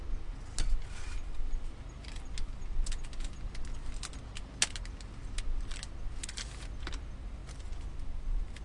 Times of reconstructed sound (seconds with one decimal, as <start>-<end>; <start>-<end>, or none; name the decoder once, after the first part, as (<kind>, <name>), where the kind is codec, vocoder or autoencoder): none